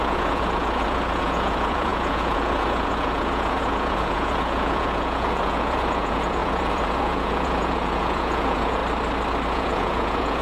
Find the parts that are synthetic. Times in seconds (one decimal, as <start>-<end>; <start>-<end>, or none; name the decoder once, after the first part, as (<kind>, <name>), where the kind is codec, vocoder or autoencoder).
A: 0.0-8.8 (vocoder, Vocos); 9.5-10.4

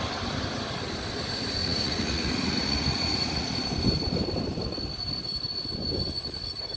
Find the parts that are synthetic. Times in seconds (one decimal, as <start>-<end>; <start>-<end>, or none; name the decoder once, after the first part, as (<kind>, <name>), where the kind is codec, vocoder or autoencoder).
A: 1.6-3.5 (vocoder, Vocos)

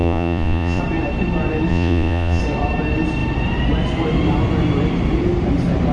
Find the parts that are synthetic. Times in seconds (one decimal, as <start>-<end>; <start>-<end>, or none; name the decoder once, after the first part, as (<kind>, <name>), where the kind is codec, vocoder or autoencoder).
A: 0.0-0.8 (vocoder, Vocos); 1.7-2.4

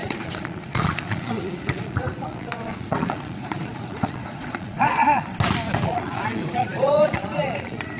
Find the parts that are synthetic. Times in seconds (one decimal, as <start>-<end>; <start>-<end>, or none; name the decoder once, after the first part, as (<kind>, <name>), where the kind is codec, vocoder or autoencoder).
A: 0.0-5.3 (vocoder, Vocos); 5.8-8.0

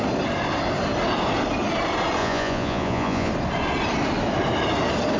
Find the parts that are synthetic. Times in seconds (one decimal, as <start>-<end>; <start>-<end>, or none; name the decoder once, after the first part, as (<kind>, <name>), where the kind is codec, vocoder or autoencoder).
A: 2.2-3.3 (vocoder, Vocos)

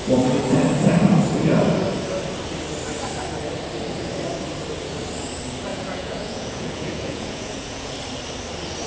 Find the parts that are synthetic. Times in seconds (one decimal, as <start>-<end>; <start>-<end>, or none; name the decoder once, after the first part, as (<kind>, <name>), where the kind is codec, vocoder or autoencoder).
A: 5.7-7.9 (vocoder, Vocos)